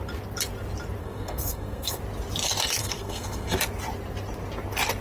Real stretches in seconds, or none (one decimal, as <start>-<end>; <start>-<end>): 0.0-1.0; 2.0-2.8; 3.6-5.0